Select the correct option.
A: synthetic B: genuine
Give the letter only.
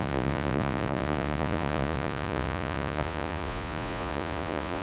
A